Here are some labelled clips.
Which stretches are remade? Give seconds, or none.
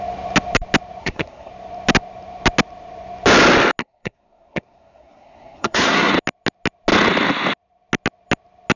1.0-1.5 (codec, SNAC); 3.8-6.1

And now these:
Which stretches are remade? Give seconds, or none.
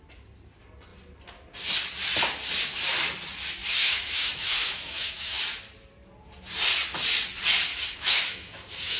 3.6-5.4 (autoencoder, DAC-VAE); 7.7-9.0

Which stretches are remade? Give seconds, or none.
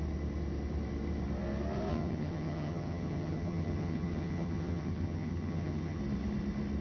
1.9-6.0 (vocoder, HiFi-GAN)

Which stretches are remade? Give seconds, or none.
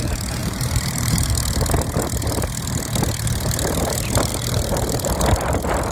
0.4-1.3 (vocoder, BigVGAN v2)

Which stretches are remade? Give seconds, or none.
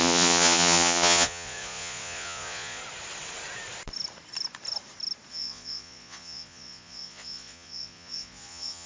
0.0-2.8 (vocoder, Vocos); 5.3-8.9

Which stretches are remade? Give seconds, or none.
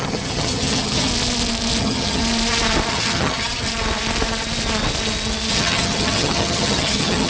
0.0-1.1 (vocoder, HiFi-GAN); 1.8-2.2; 2.9-3.7; 5.5-7.3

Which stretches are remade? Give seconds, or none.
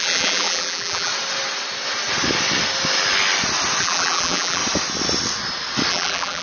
0.0-1.1 (vocoder, BigVGAN v2); 3.8-4.6; 5.9-6.4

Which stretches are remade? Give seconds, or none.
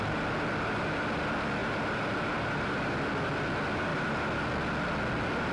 none